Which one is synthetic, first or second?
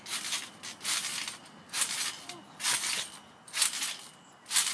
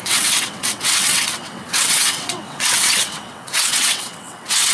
second